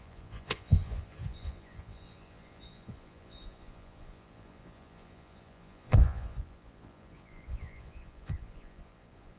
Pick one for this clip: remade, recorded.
remade